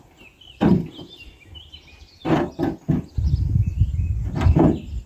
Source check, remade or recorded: recorded